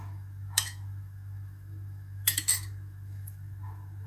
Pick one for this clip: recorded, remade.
remade